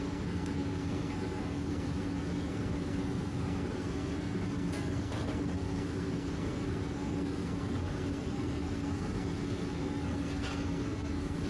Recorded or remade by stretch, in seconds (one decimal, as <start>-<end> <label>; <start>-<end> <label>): 0.0-11.5 remade